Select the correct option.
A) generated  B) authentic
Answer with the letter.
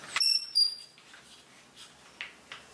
B